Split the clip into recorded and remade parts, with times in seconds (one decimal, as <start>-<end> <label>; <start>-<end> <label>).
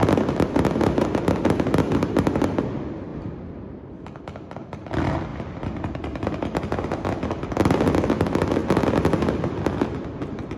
0.0-10.6 recorded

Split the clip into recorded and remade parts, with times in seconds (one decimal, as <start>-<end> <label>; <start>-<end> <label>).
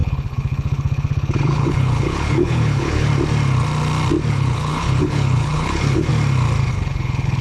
0.0-3.1 remade; 3.1-4.3 recorded; 4.3-6.1 remade; 6.1-6.7 recorded; 6.7-7.4 remade